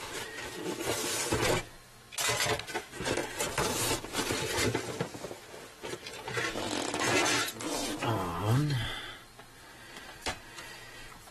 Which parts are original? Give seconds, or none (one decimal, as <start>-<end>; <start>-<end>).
0.0-3.2; 4.2-11.3